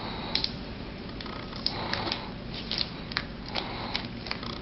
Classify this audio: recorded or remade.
recorded